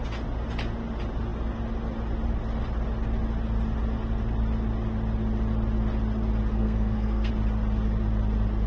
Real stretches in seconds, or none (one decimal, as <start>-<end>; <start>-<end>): 0.0-6.5; 7.3-8.7